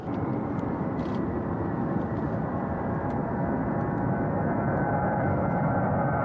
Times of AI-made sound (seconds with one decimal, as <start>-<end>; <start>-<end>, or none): 0.0-3.2; 4.9-6.2